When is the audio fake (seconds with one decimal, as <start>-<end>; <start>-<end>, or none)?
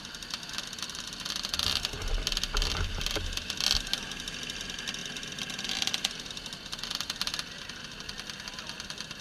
none